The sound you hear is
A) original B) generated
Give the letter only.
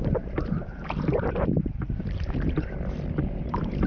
B